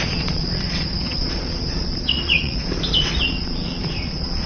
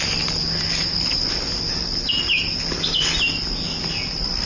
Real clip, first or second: second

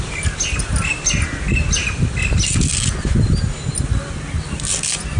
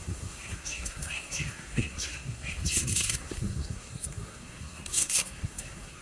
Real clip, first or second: first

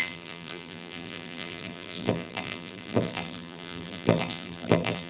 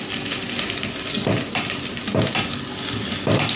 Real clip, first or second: second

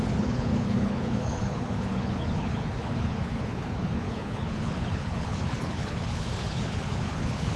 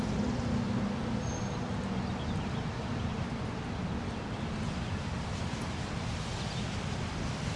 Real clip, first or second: second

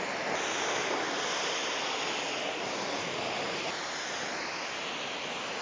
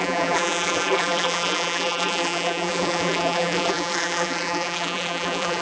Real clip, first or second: first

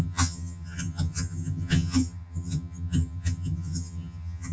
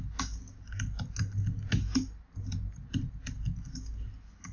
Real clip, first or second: second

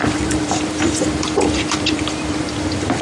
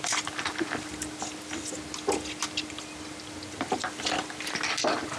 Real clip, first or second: second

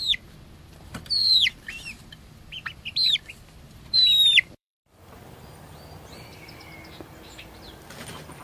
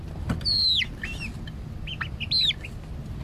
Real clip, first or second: second